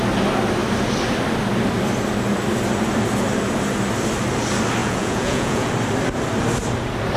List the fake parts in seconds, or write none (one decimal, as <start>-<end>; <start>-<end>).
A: 4.8-5.7